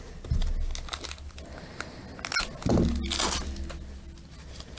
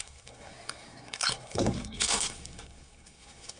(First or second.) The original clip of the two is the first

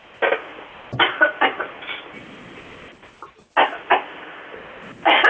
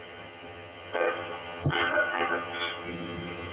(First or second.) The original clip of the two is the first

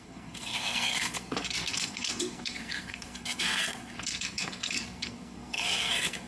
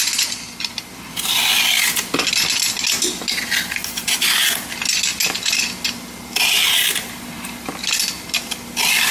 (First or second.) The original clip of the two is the second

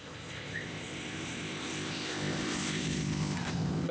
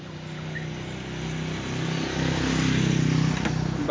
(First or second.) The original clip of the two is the second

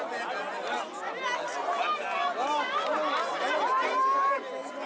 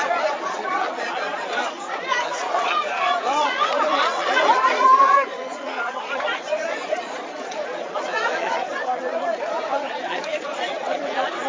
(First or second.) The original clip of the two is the first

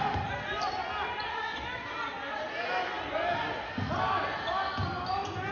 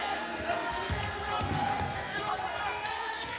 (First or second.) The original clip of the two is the first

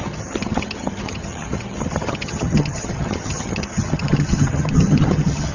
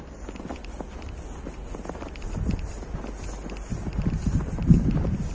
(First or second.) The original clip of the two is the second